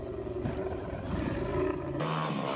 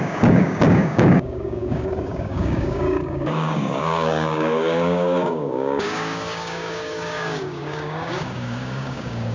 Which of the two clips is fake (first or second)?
second